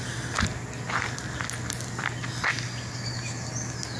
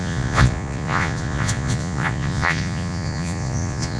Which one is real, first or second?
first